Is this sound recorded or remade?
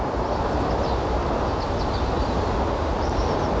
recorded